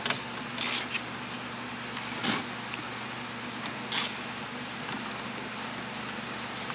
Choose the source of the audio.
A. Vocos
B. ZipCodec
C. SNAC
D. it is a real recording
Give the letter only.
D